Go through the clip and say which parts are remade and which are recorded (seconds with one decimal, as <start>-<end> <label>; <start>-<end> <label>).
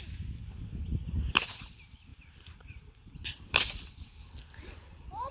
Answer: 0.0-2.1 recorded; 2.1-4.4 remade; 4.4-5.3 recorded